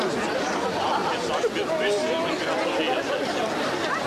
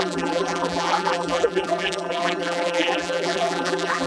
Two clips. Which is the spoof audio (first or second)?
second